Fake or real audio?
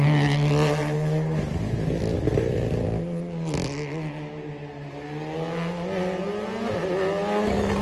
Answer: real